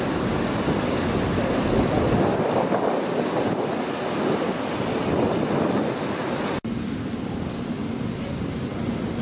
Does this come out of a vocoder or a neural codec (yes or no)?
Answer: no